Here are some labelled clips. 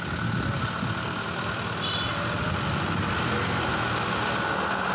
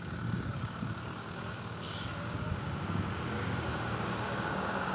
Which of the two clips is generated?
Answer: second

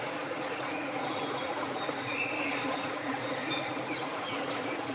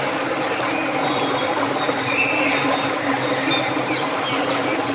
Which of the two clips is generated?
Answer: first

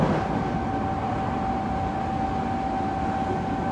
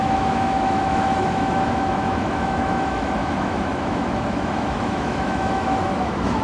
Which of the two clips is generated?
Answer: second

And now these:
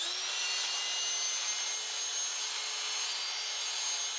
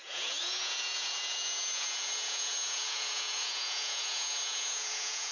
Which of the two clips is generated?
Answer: second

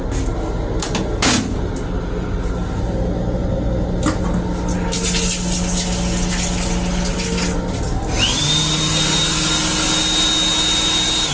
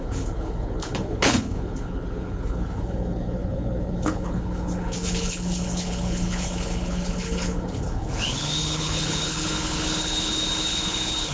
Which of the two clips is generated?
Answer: second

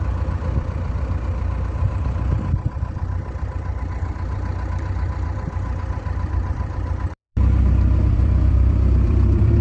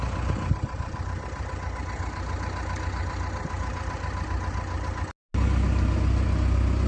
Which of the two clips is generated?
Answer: first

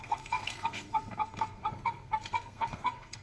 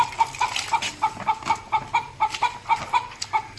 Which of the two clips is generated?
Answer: first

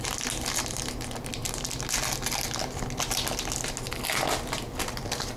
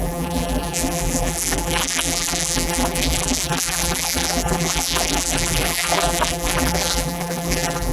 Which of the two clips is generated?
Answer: second